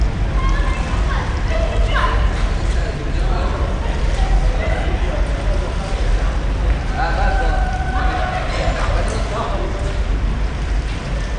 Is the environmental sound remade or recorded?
recorded